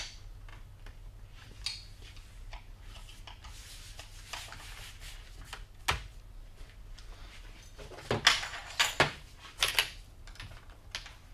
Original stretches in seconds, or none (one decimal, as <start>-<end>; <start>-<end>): 0.0-11.3